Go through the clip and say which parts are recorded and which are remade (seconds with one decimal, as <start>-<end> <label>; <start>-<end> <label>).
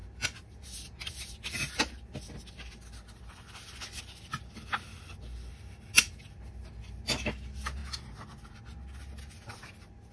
0.0-10.1 recorded